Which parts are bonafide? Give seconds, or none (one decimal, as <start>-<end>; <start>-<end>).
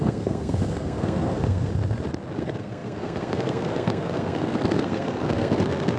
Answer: 1.7-2.4